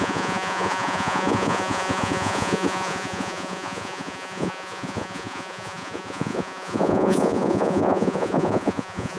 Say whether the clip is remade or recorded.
remade